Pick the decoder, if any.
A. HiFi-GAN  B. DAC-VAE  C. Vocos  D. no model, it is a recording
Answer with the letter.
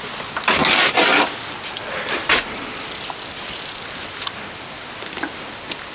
D